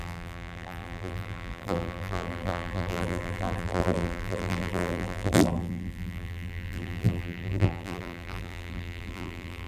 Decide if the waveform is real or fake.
fake